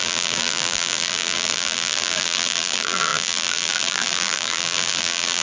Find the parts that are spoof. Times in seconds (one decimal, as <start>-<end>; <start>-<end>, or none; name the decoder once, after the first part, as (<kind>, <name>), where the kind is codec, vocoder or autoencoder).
0.0-5.4 (vocoder, BigVGAN v2)